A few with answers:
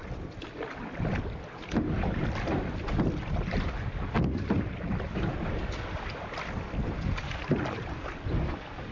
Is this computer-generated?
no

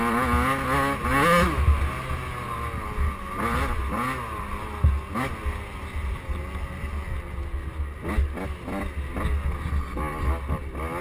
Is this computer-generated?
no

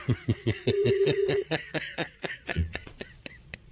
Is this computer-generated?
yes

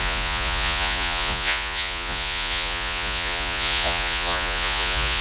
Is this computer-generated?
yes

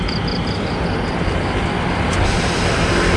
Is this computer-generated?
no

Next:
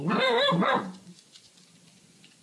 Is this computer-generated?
yes